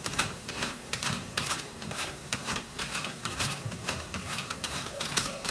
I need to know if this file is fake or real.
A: fake